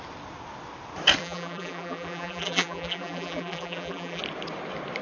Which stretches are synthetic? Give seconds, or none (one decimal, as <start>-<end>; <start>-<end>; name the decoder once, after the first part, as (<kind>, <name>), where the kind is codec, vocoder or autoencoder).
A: 1.2-4.2 (vocoder, BigVGAN v2)